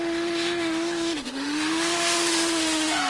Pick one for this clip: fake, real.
fake